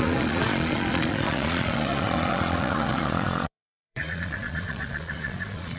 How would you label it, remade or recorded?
remade